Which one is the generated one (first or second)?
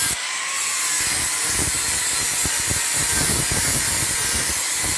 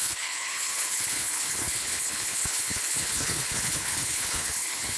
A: second